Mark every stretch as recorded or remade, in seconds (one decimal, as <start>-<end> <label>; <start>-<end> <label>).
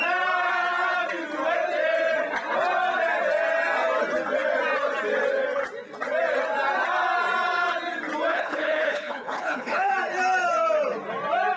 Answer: 0.0-8.3 recorded; 8.3-9.9 remade; 9.9-11.6 recorded